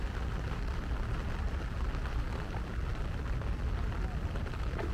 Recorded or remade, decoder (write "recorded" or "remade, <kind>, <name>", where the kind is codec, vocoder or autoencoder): recorded